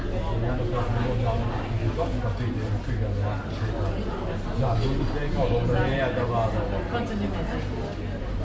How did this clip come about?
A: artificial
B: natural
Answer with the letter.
B